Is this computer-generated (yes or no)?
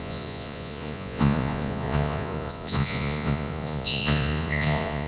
yes